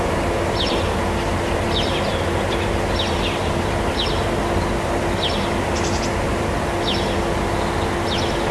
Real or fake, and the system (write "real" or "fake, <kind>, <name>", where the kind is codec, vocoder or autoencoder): real